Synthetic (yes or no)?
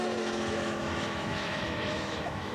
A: yes